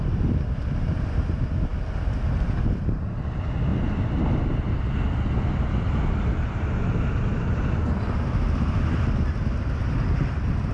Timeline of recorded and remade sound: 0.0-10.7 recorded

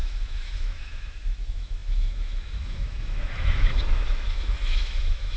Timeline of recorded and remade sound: 0.0-5.4 remade